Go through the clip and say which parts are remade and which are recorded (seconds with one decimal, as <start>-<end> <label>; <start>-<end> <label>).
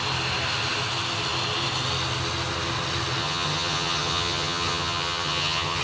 0.0-3.2 recorded; 3.2-5.8 remade